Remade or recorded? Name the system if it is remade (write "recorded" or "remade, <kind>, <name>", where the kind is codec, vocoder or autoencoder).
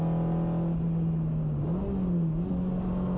recorded